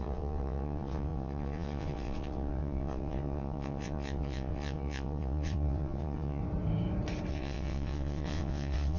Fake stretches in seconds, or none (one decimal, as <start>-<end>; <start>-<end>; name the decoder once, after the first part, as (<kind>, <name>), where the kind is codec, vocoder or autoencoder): 0.0-6.4 (vocoder, WaveNeXt); 7.3-9.0

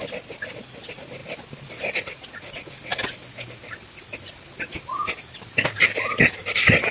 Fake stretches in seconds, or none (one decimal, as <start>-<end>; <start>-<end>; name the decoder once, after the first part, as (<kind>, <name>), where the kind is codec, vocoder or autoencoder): none

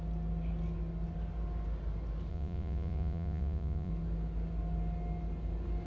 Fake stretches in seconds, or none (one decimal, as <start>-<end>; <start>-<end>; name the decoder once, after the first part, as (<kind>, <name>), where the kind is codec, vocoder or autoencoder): 2.3-3.9 (vocoder, Vocos)

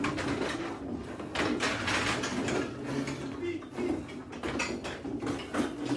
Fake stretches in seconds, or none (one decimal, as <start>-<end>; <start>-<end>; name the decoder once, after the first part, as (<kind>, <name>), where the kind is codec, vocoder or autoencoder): none

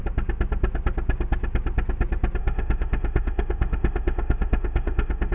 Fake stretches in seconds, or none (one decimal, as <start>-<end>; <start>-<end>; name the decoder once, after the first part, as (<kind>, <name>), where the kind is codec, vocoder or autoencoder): 2.4-5.3 (autoencoder, DAC-VAE)

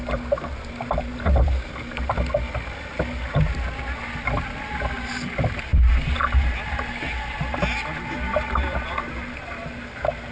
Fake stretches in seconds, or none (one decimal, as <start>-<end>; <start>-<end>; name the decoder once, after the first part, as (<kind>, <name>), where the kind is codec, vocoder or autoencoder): none

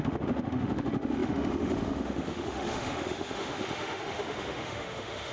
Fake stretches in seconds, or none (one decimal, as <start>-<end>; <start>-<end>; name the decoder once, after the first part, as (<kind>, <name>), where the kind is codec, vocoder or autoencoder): 0.0-5.3 (autoencoder, DAC-VAE)

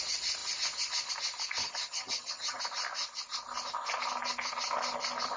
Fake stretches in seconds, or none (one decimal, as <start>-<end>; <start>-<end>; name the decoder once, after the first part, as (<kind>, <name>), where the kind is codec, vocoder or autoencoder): 1.6-2.6 (vocoder, HiFi-GAN)